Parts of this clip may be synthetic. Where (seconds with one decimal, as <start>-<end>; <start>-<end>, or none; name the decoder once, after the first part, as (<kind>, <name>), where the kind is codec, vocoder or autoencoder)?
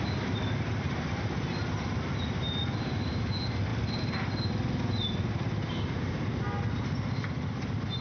none